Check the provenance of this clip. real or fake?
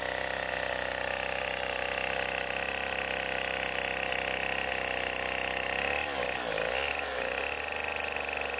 real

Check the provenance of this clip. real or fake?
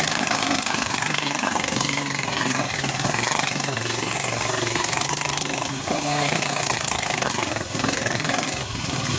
fake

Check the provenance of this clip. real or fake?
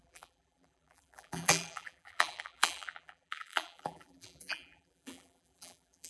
fake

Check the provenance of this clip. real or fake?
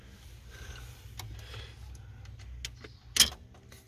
real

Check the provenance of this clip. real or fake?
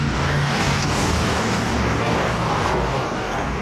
fake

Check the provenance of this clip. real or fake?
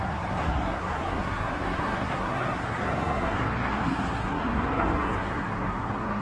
fake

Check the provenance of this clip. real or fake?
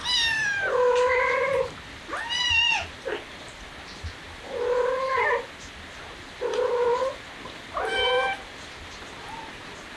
real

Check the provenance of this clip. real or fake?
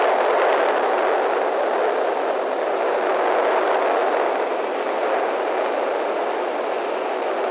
real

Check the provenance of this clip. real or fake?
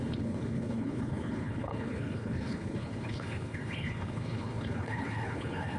fake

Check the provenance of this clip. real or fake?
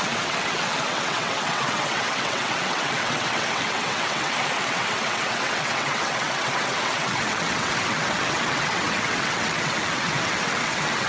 fake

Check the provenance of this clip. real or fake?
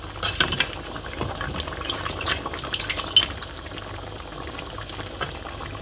real